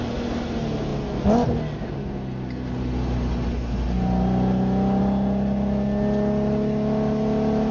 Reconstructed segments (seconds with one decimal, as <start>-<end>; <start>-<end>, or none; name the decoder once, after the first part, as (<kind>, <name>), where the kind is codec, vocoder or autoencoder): none